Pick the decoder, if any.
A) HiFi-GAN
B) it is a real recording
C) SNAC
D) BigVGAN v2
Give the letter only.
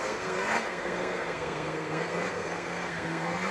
C